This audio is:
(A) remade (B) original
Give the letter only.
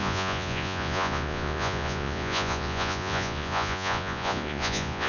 A